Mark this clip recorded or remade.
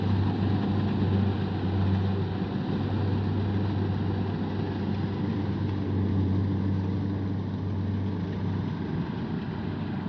recorded